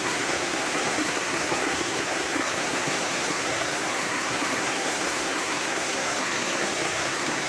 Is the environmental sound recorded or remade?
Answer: remade